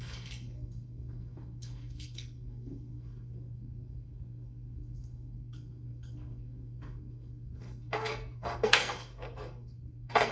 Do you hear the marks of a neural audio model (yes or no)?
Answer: yes